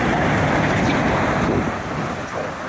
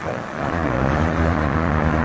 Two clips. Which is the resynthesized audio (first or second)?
second